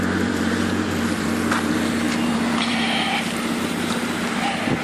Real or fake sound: fake